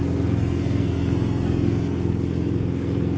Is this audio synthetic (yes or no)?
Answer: yes